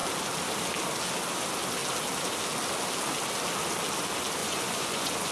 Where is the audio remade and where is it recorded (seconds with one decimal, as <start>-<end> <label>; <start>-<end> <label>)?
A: 0.0-4.4 recorded; 4.4-5.3 remade